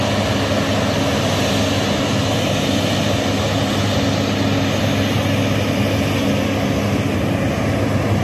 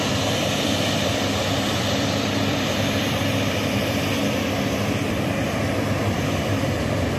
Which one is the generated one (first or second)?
second